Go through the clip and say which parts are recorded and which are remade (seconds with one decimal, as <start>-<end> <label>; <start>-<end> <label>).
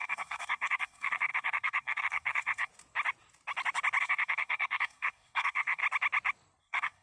0.0-2.7 remade; 2.7-4.0 recorded; 4.0-5.8 remade; 5.8-6.6 recorded; 6.6-7.0 remade